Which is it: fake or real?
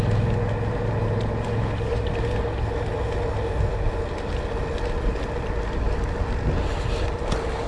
real